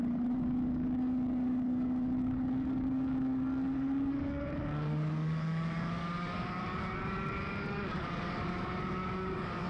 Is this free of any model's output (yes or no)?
no